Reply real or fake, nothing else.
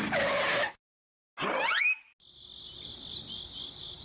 real